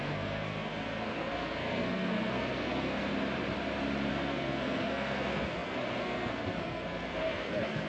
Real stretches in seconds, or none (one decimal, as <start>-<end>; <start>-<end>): 3.1-4.1